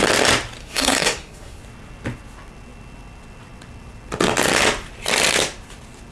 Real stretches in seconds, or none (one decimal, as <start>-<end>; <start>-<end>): 0.0-0.6; 1.6-6.1